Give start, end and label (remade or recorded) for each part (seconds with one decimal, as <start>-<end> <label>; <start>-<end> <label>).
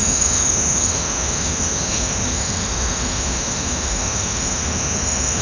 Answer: 0.0-5.4 remade